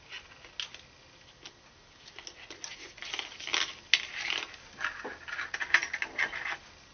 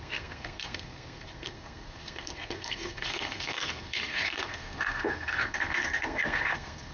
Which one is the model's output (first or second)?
second